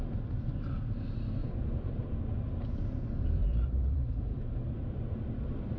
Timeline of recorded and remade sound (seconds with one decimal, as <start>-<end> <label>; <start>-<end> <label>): 0.0-1.4 recorded; 1.4-2.2 remade; 2.2-3.4 recorded; 3.4-4.2 remade; 4.2-5.8 recorded